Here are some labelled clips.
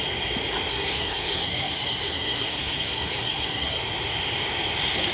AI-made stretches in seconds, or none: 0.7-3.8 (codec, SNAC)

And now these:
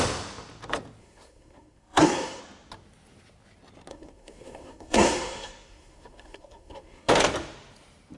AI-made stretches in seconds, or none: 1.0-2.4 (codec, SNAC); 3.9-7.1

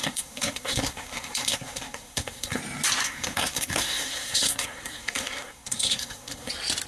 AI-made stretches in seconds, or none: 0.0-2.6 (codec, SNAC); 3.0-6.5

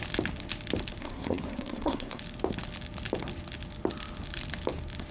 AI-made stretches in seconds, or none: 1.0-2.2 (codec, SNAC)

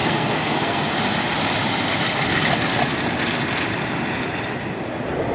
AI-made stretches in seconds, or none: 0.0-0.9 (codec, SNAC)

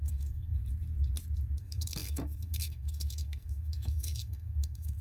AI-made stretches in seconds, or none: 0.0-0.6 (codec, SNAC); 1.6-5.0

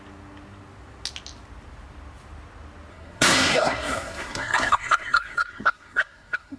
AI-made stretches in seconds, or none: 2.9-6.6 (codec, SNAC)

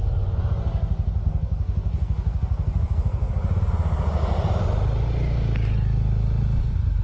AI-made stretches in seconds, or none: 1.2-3.3 (codec, SNAC)